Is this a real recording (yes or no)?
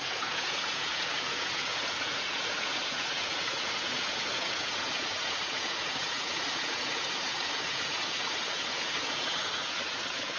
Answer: no